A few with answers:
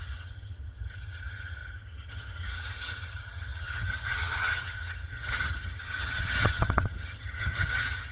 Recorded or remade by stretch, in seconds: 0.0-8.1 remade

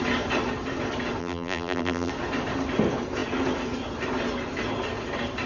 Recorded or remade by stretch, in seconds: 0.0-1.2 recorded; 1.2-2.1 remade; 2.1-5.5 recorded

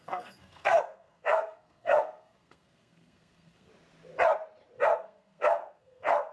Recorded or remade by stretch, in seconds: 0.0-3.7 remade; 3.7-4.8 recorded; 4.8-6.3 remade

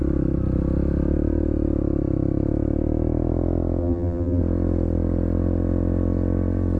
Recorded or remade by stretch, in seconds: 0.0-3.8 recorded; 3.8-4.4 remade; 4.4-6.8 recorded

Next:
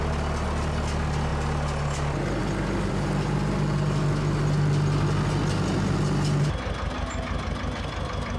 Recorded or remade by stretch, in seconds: 0.0-8.4 recorded